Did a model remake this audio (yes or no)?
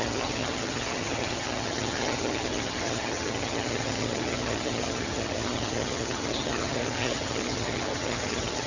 yes